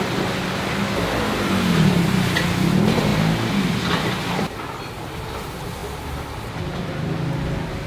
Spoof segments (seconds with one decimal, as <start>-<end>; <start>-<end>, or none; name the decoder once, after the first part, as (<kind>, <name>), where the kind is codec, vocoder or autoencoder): none